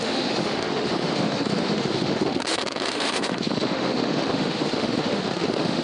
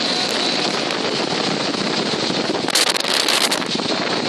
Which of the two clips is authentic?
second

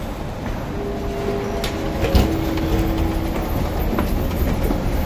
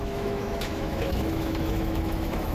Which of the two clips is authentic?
first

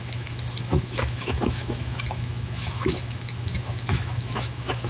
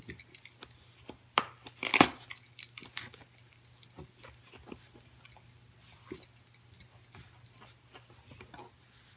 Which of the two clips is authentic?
second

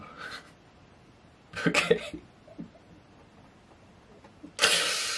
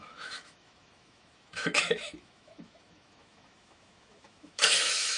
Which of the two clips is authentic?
first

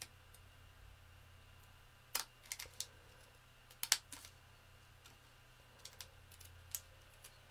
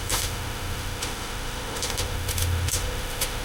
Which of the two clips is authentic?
first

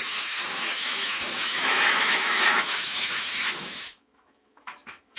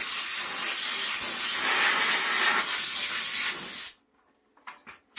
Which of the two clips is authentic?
second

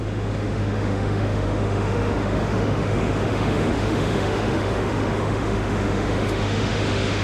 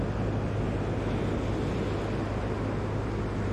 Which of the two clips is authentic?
second